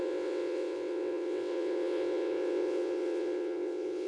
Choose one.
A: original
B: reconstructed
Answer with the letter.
B